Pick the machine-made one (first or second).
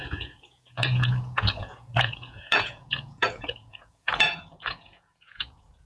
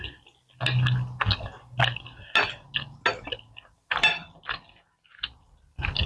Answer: first